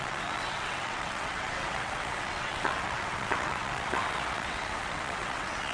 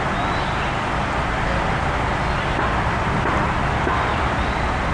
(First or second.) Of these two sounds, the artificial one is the first